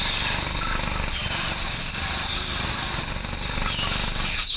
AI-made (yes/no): no